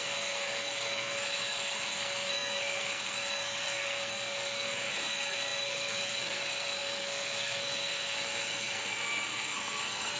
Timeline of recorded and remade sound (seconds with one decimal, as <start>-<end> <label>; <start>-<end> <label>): 0.0-10.2 remade